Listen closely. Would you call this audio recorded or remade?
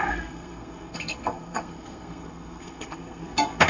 remade